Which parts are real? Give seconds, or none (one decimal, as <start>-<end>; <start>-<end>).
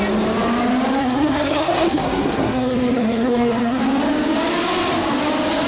0.0-1.0; 3.8-5.7